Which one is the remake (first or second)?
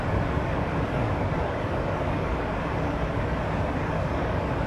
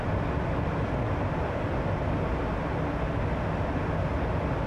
first